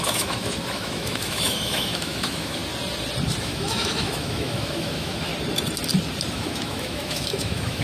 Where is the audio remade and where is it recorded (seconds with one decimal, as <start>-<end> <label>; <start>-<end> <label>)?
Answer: 0.0-2.6 remade; 2.6-3.4 recorded; 3.4-5.3 remade; 5.3-6.3 recorded; 6.3-7.8 remade